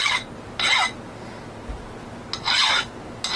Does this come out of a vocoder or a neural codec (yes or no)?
no